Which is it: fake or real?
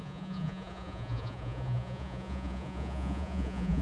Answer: fake